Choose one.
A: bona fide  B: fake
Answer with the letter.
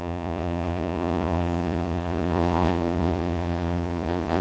B